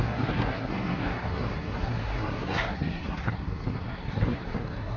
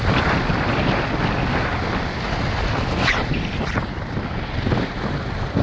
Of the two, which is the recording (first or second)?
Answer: second